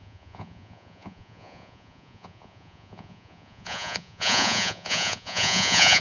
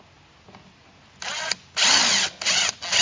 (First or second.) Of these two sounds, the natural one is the second